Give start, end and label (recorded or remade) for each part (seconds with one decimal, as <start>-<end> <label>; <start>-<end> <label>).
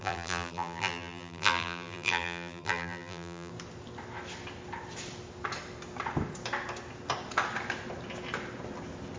0.0-3.5 remade; 3.5-9.2 recorded